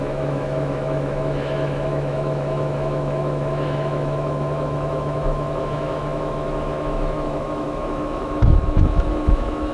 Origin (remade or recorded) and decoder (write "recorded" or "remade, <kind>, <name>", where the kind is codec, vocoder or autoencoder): remade, autoencoder, DAC-VAE